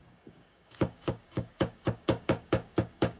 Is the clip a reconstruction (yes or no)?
yes